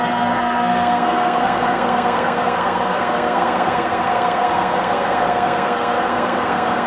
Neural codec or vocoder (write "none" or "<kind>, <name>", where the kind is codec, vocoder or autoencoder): codec, SNAC